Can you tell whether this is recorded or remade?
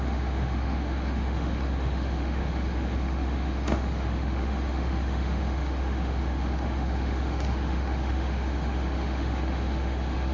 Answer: remade